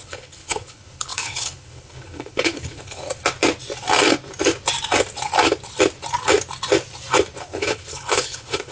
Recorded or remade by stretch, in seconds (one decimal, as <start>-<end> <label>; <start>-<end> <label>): 0.0-3.0 remade; 3.0-7.4 recorded; 7.4-8.7 remade